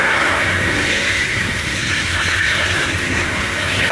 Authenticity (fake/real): fake